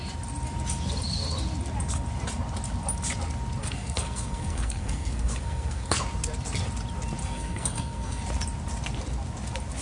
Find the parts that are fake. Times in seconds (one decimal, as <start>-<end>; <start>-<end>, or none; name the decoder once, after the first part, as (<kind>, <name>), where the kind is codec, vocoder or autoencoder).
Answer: 3.6-6.0 (codec, SNAC); 7.2-8.2